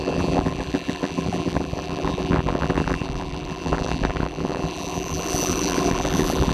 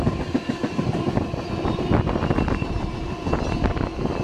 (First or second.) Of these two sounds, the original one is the second